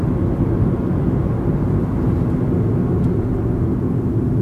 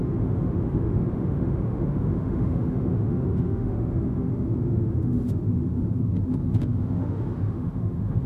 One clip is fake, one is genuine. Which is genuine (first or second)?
first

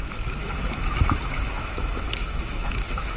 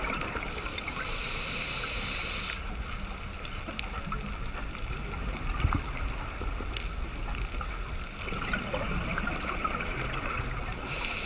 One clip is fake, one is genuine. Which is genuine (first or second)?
second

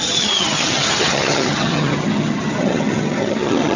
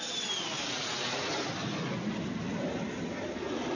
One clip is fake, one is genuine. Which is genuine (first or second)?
second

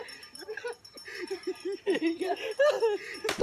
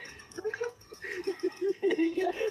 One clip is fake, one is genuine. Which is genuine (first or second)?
first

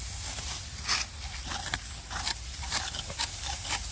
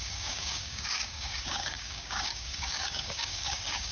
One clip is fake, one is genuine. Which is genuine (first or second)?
first